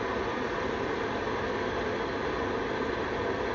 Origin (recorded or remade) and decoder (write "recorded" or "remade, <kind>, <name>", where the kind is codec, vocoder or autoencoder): recorded